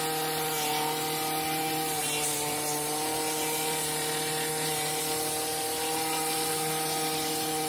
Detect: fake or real real